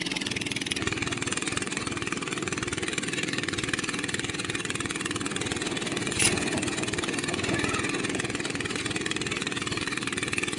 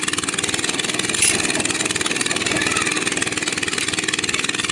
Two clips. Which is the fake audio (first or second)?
first